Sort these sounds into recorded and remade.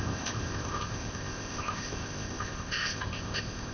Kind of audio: remade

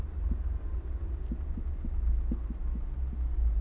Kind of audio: recorded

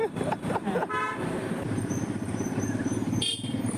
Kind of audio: remade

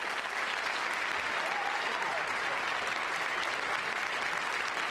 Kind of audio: recorded